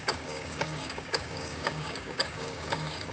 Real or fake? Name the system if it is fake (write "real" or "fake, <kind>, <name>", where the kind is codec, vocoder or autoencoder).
fake, codec, DAC